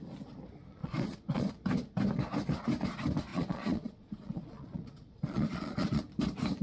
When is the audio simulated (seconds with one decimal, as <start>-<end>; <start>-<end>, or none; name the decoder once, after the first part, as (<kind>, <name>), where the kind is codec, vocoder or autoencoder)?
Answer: 0.8-1.5 (vocoder, Vocos); 3.3-6.0

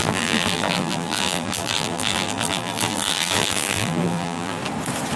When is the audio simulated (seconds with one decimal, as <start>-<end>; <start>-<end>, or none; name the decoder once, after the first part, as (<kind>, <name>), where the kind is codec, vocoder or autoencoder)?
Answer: 0.0-4.6 (vocoder, BigVGAN v2)

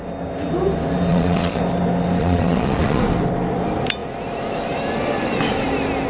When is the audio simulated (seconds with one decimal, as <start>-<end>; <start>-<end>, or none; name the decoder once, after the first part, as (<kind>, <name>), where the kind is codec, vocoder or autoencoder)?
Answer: 1.1-1.6 (vocoder, Vocos); 2.2-3.0

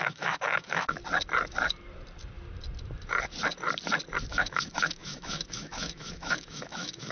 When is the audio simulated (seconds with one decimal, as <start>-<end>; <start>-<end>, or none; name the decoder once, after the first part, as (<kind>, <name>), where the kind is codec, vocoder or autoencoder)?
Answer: 0.0-1.0 (autoencoder, DAC-VAE); 4.3-7.1

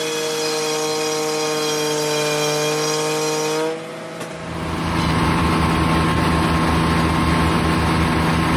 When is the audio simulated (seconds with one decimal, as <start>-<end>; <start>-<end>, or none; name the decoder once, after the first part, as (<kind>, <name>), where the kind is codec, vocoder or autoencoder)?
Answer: 3.9-5.4 (vocoder, BigVGAN v2)

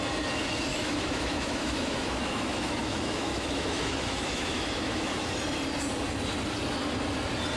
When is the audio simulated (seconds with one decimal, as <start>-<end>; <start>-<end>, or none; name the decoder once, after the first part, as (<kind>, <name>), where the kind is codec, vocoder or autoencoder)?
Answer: 0.7-5.3 (autoencoder, DAC-VAE)

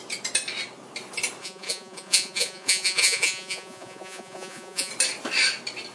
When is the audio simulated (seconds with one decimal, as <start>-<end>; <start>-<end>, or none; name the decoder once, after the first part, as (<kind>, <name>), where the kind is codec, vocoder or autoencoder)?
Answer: 1.4-4.9 (vocoder, Vocos)

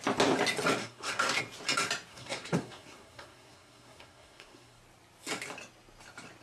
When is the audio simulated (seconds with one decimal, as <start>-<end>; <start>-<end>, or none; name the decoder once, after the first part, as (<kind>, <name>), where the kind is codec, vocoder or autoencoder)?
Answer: 0.8-1.4 (codec, SNAC); 2.1-4.8